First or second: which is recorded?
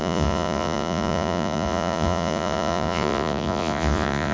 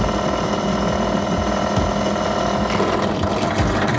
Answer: second